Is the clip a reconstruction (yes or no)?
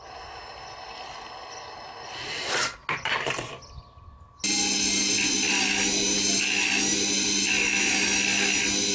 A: no